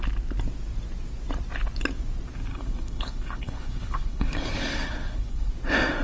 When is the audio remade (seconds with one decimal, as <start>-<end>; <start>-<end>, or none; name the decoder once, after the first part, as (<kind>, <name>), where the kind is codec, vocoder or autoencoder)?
2.5-5.5 (codec, HILCodec)